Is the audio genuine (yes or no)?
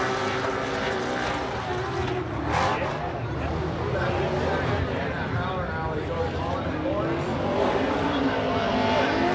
yes